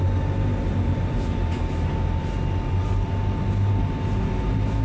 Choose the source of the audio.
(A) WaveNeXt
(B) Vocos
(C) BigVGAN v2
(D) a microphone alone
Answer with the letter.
D